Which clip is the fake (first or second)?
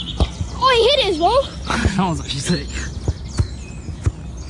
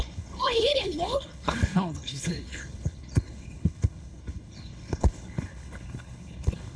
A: second